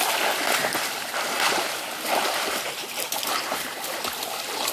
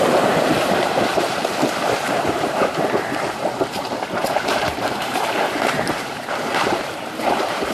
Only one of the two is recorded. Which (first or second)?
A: first